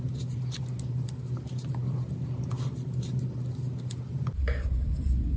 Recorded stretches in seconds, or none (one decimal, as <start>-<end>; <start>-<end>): 0.0-5.4